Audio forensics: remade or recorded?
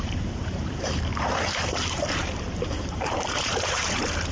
remade